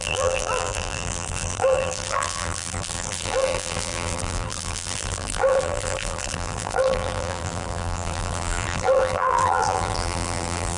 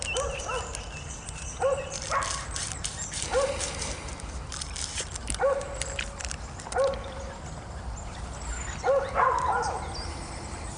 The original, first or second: second